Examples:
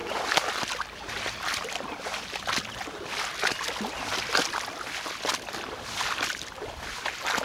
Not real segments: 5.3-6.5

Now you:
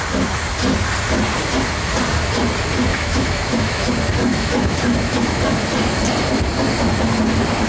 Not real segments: 2.9-3.9; 4.3-5.4

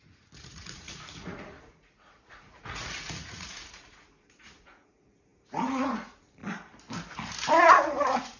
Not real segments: 0.0-6.4; 7.7-8.4